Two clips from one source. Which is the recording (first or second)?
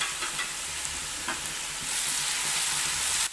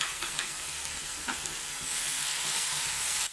first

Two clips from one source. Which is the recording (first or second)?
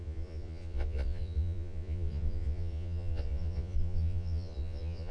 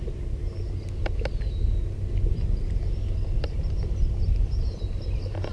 second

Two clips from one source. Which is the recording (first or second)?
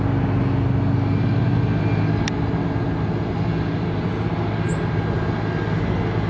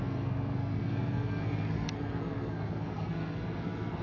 first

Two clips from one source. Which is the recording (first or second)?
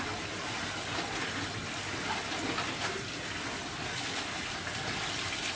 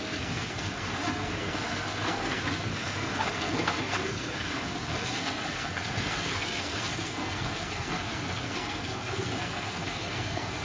first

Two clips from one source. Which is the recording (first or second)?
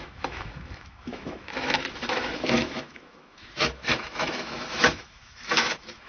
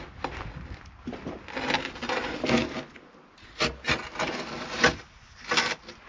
second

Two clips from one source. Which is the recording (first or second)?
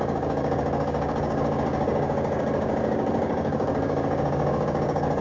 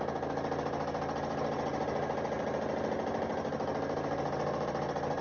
second